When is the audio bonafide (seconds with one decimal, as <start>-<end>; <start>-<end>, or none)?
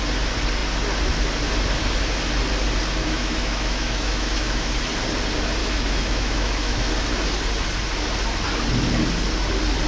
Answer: 0.0-3.0; 4.7-5.6; 6.9-9.9